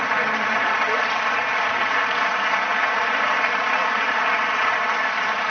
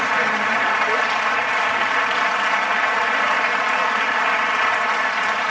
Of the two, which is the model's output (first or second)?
second